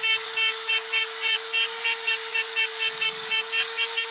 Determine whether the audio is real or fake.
fake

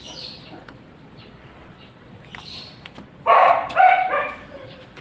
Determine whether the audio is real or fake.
fake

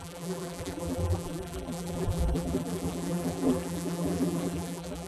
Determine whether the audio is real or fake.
fake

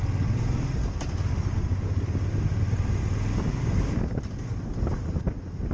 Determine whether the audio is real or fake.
real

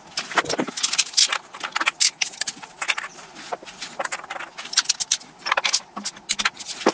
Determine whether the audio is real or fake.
real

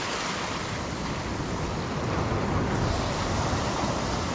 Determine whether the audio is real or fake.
real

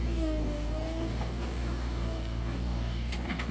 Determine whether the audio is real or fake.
fake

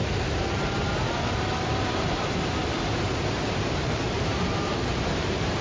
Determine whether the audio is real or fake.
fake